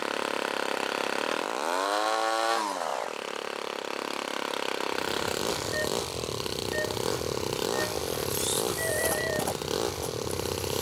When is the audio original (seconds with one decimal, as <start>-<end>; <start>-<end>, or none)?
0.0-10.8